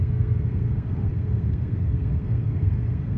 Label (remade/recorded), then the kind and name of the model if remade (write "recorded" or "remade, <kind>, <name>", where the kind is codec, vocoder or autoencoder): remade, codec, SNAC